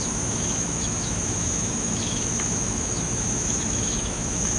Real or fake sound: fake